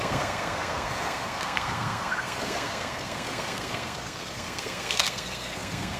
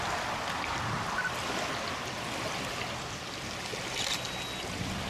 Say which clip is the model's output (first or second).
first